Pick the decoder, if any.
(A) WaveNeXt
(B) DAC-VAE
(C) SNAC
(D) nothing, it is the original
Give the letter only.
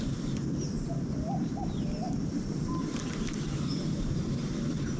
D